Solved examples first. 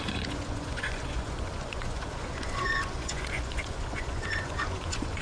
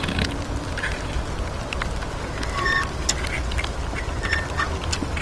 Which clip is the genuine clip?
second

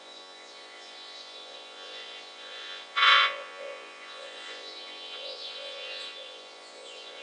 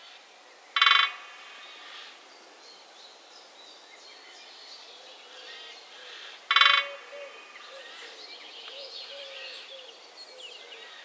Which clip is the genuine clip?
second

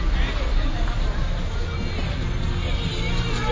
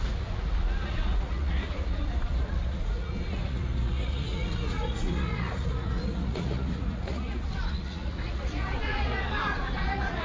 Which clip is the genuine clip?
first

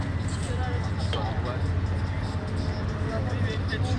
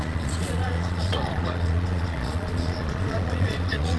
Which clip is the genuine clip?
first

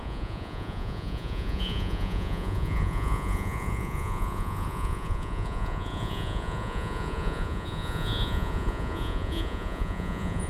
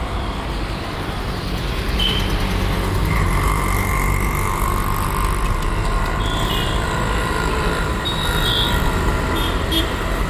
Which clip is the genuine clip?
second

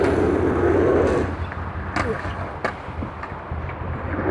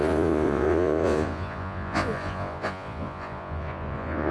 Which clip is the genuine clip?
first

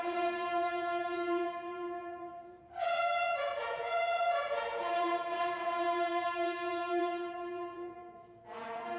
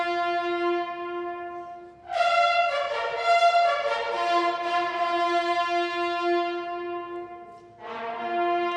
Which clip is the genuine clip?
second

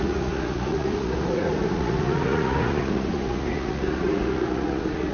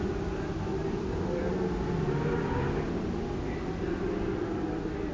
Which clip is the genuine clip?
second